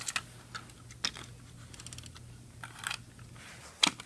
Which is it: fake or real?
real